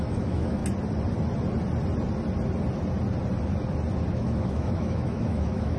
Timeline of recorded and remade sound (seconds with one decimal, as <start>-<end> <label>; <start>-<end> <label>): 0.0-0.6 remade; 0.6-4.1 recorded; 4.1-5.8 remade